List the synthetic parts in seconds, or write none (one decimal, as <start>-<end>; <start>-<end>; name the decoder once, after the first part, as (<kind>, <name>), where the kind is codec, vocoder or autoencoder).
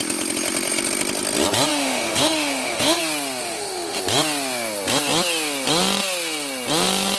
1.7-3.0 (autoencoder, DAC-VAE); 3.4-4.0